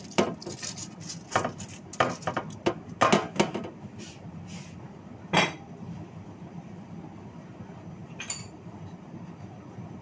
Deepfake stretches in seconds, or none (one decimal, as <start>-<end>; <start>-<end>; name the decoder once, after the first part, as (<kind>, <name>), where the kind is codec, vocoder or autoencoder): none